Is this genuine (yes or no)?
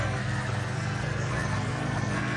no